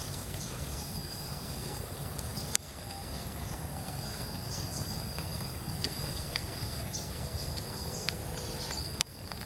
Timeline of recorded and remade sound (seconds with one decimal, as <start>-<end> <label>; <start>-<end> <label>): 0.0-8.2 remade; 8.2-8.8 recorded; 8.8-9.5 remade